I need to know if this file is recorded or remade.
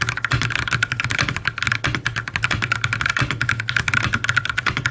recorded